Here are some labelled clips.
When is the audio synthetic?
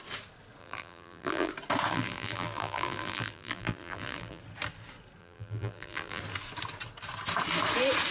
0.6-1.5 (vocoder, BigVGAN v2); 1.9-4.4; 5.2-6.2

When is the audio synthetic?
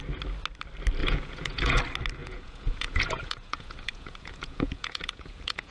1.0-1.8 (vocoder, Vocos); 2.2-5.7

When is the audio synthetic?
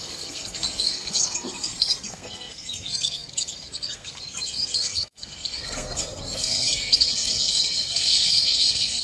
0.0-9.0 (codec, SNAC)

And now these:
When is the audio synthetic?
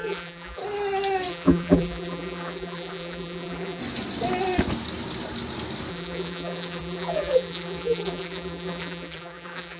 0.0-0.6 (vocoder, BigVGAN v2); 1.3-3.8; 5.9-9.8